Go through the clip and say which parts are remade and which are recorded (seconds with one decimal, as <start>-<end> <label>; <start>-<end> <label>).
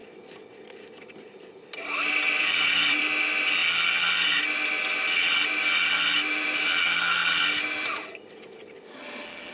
0.0-3.0 remade; 3.0-9.5 recorded